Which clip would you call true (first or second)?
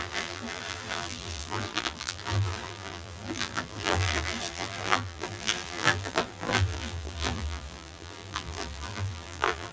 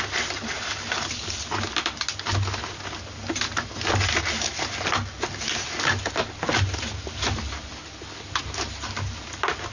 second